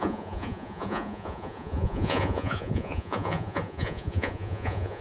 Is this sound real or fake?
fake